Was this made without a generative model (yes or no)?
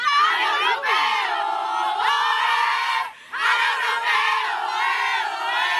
yes